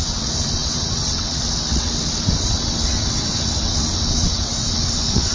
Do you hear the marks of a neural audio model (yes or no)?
yes